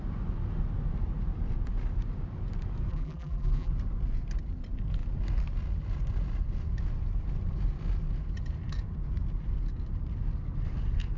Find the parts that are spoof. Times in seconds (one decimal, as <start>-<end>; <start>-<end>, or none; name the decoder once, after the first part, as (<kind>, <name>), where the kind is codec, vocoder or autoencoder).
2.9-3.7 (vocoder, BigVGAN v2)